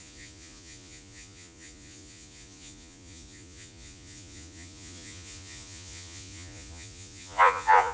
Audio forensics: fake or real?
fake